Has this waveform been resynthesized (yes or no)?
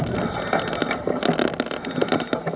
no